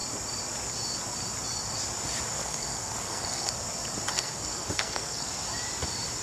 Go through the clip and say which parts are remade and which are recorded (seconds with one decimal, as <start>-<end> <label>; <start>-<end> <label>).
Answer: 0.0-2.3 recorded; 2.3-3.5 remade; 3.5-4.1 recorded; 4.1-5.3 remade; 5.3-6.2 recorded